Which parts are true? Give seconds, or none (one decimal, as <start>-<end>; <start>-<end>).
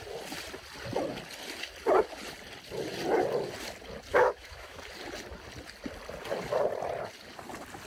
0.0-4.1; 4.8-7.9